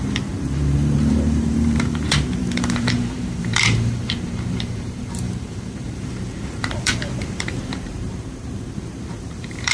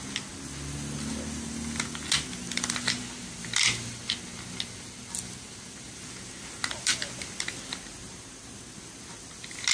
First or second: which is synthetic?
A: first